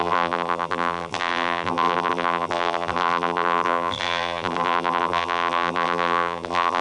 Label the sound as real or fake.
fake